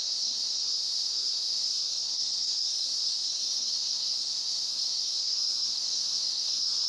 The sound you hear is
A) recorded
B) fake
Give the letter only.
B